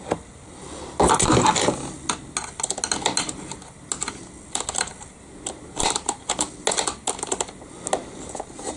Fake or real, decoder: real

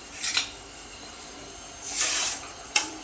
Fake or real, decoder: fake, vocoder, BigVGAN v2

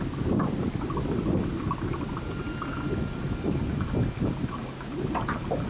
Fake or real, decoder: real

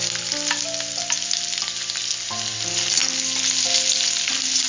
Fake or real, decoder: real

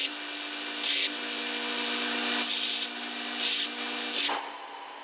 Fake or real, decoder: real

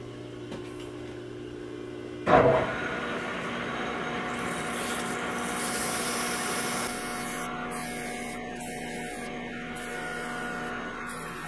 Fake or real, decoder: real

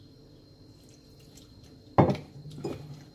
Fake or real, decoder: real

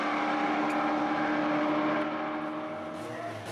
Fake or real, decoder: real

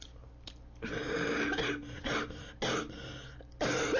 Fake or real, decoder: real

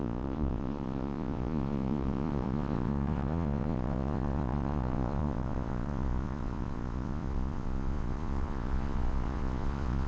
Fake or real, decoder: fake, vocoder, Vocos